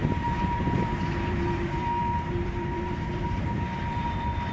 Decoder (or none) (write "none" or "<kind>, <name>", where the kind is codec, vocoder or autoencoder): vocoder, BigVGAN v2